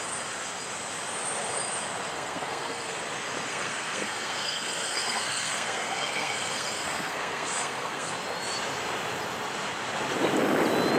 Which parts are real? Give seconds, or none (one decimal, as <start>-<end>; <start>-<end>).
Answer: 0.0-2.1; 3.0-3.5; 8.1-11.0